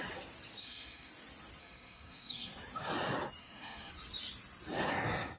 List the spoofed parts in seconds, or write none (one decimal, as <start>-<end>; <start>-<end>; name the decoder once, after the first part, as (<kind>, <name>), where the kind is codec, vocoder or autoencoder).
0.6-1.1 (codec, SNAC); 1.6-2.5; 3.4-3.9